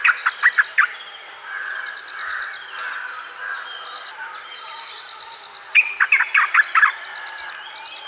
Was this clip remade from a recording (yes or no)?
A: no